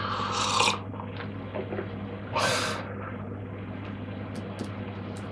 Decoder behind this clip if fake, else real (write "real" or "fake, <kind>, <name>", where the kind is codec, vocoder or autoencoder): real